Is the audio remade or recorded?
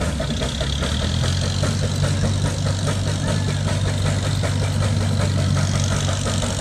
recorded